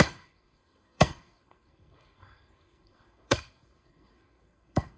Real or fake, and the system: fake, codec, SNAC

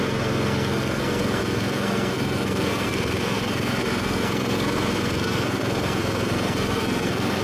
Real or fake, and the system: fake, codec, SNAC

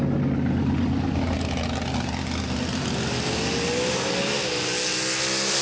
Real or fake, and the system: real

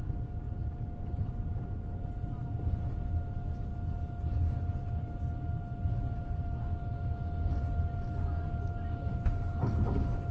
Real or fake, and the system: real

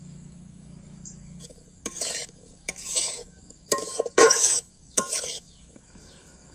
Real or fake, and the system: fake, codec, DAC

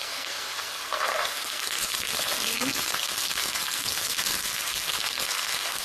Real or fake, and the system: fake, codec, SNAC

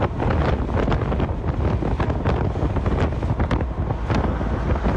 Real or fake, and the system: real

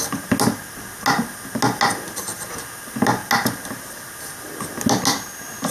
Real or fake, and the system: real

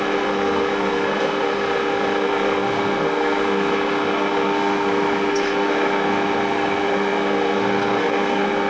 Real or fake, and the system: fake, codec, SNAC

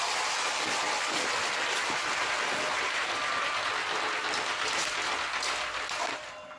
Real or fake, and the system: real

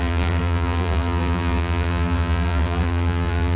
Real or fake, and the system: fake, vocoder, BigVGAN v2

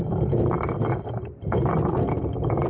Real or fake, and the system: real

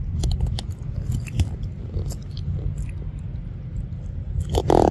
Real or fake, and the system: real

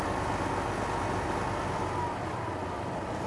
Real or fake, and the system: real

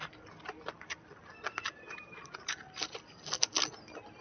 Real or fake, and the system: real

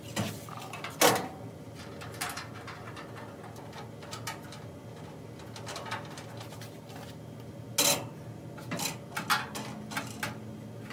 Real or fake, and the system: real